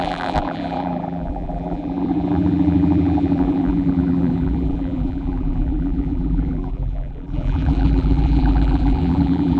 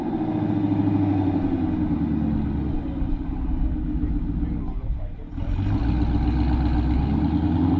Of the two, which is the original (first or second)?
second